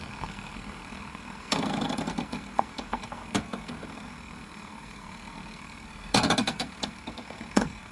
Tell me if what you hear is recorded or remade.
remade